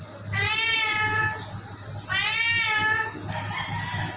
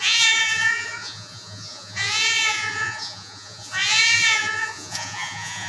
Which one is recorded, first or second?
first